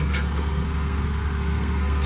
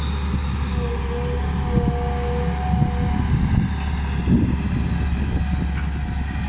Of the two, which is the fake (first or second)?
first